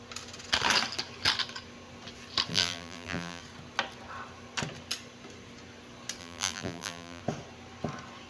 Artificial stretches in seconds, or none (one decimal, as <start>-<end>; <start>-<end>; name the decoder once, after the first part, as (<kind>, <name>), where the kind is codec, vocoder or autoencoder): 2.5-3.4 (vocoder, BigVGAN v2); 6.2-7.2